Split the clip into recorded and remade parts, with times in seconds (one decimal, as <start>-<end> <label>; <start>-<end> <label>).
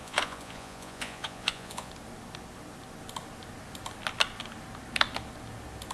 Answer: 0.0-1.9 remade; 1.9-5.9 recorded